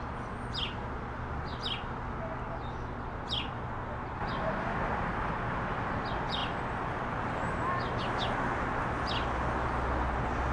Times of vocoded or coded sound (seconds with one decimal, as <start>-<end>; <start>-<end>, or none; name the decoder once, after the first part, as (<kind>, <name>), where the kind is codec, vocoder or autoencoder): none